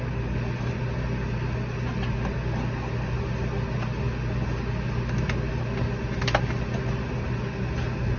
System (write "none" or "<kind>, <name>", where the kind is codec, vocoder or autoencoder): none